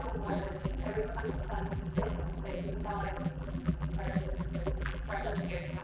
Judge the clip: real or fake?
fake